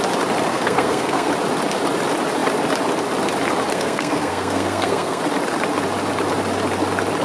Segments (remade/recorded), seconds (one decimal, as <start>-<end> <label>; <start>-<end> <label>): 0.0-0.5 recorded; 0.5-1.3 remade; 1.3-3.7 recorded; 3.7-5.2 remade; 5.2-7.2 recorded